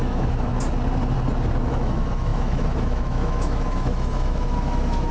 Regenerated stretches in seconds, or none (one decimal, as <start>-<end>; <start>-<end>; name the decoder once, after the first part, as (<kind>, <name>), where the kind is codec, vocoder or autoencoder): 0.0-0.5 (autoencoder, DAC-VAE); 1.7-5.1